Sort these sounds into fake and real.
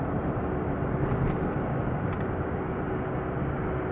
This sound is real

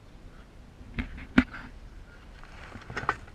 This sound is real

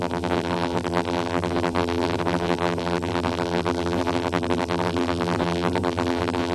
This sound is fake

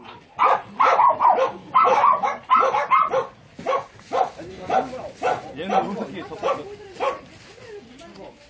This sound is real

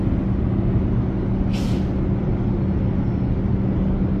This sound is real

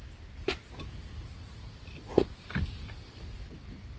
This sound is real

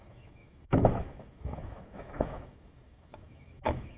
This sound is fake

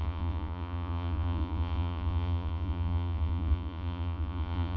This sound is fake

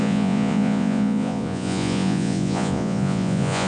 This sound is fake